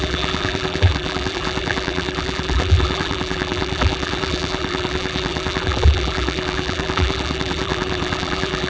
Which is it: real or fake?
fake